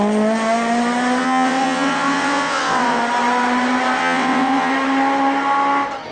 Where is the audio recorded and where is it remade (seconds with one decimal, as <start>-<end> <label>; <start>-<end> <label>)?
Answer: 0.0-1.2 recorded; 1.2-3.0 remade; 3.0-4.0 recorded; 4.0-4.7 remade; 4.7-6.1 recorded